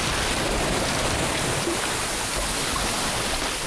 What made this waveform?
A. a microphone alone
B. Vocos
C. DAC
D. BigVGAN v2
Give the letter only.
A